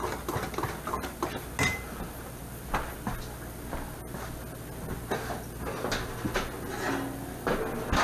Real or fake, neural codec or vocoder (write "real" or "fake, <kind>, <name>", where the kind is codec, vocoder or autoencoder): real